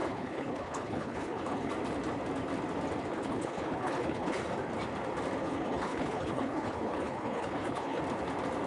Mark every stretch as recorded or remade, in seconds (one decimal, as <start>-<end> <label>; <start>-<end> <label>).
0.0-1.7 remade; 1.7-3.1 recorded; 3.1-4.4 remade; 4.4-5.4 recorded; 5.4-8.0 remade; 8.0-8.7 recorded